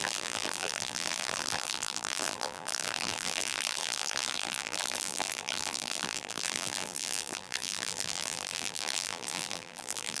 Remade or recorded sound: remade